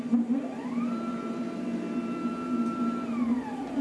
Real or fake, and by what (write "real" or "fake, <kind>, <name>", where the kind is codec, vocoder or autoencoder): real